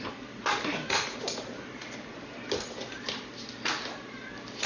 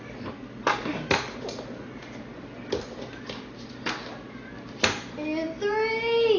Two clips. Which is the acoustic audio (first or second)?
second